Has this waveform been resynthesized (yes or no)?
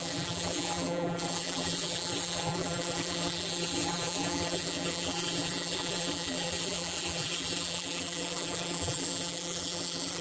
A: yes